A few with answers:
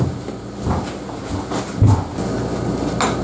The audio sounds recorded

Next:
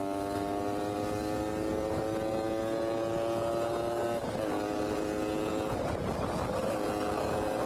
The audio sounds recorded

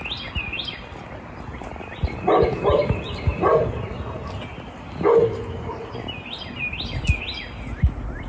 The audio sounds recorded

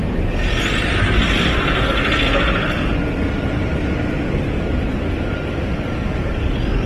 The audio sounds recorded